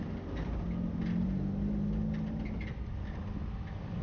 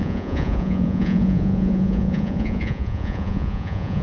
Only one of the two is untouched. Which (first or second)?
first